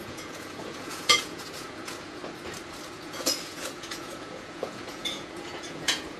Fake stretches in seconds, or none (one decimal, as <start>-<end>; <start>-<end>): 0.0-2.2; 2.9-6.2